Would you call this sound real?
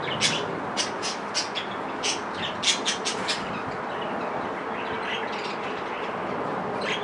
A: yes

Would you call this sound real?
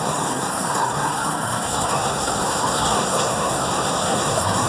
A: no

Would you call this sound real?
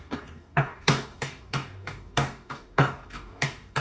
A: no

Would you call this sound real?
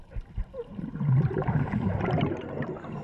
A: no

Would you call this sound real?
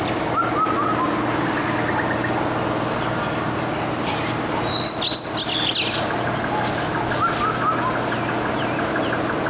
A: yes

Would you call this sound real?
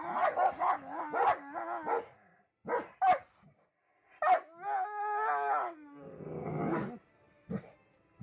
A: yes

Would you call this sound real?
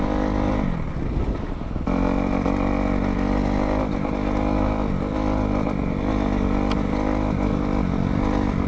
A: yes